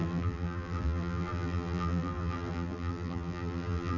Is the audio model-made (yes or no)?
yes